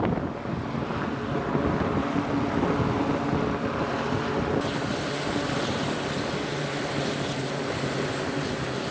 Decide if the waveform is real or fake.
real